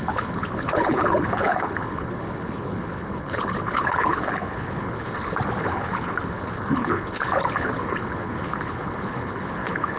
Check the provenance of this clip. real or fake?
fake